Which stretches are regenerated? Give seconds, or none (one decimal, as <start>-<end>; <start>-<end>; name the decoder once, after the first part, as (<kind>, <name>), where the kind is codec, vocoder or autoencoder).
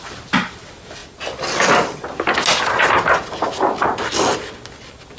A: none